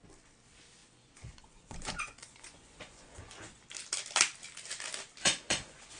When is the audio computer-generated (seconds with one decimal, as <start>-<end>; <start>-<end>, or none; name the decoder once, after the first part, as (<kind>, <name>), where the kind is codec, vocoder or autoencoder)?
0.8-3.6 (vocoder, Vocos); 5.2-6.0